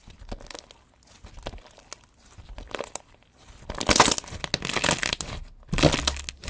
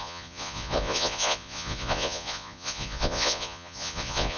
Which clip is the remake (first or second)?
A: second